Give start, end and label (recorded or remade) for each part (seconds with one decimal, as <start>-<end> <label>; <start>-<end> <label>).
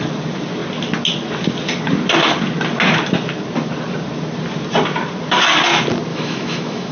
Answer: 0.0-6.1 recorded; 6.1-6.9 remade